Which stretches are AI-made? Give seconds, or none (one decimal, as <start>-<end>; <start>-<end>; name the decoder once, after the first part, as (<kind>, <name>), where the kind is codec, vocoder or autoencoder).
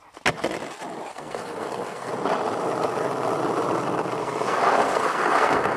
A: 1.1-2.1 (codec, SNAC); 4.2-5.8